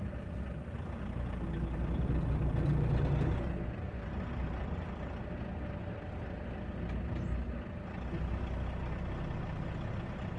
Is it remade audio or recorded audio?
recorded